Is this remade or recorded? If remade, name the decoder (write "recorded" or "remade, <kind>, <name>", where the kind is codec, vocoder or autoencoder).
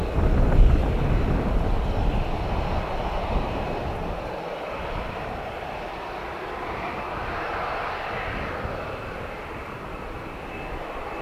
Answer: recorded